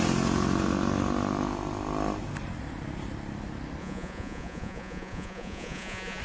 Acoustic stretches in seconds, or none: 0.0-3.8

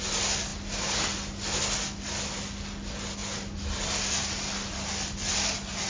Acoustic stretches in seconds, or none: 0.0-5.9

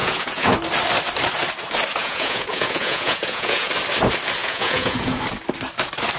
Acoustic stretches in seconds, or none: 0.5-2.0; 3.7-4.4; 5.2-6.2

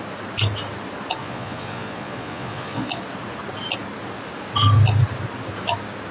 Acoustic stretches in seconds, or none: 0.0-1.2; 3.0-6.1

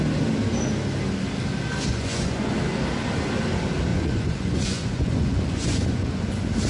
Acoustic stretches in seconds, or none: 0.0-1.9; 2.5-3.9; 6.2-6.7

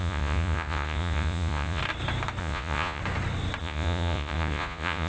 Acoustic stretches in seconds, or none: 1.8-2.4; 3.0-3.6